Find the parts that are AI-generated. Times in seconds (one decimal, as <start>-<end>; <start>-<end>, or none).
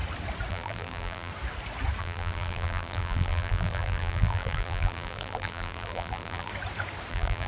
0.5-1.3; 2.0-6.5; 7.1-7.5